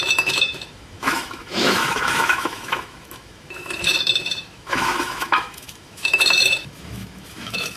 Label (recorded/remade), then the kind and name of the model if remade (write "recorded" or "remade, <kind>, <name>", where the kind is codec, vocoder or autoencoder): remade, autoencoder, DAC-VAE